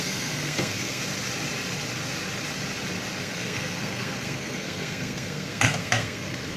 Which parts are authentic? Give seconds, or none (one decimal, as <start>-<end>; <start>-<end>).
1.0-3.2